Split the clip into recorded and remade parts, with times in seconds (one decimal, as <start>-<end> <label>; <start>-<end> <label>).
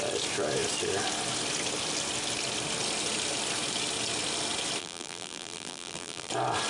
0.0-4.8 recorded; 4.8-6.3 remade; 6.3-6.7 recorded